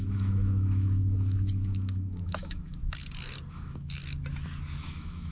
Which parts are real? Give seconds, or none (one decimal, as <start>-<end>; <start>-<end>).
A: 2.8-3.5; 4.0-4.8